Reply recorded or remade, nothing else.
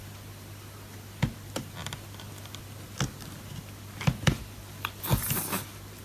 recorded